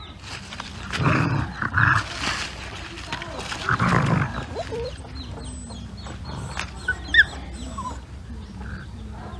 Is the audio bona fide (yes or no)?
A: yes